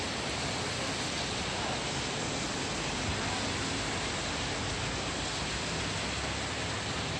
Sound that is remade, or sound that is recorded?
recorded